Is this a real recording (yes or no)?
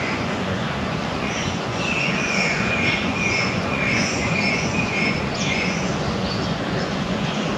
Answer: no